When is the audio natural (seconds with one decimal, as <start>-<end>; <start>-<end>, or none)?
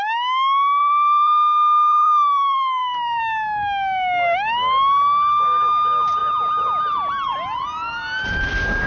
0.0-0.8; 3.2-6.2; 6.8-7.3; 8.5-8.9